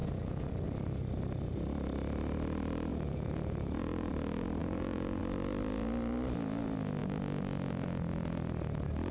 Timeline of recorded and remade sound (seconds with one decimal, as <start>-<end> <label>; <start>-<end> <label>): 0.0-0.5 remade; 0.5-2.9 recorded; 2.9-4.1 remade; 4.1-4.6 recorded; 4.6-5.2 remade; 5.2-9.1 recorded